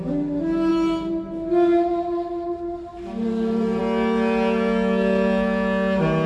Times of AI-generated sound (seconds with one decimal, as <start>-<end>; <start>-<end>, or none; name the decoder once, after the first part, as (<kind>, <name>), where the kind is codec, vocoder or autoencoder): 0.7-3.8 (vocoder, BigVGAN v2)